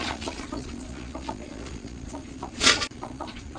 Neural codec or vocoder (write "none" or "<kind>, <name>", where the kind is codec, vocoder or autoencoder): vocoder, Vocos